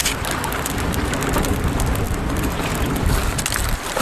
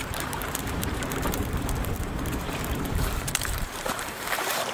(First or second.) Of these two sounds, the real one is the first